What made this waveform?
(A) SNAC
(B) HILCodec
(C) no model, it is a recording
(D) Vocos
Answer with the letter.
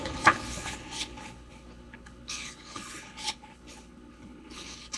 B